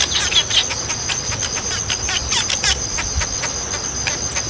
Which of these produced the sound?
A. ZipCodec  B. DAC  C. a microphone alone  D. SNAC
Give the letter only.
C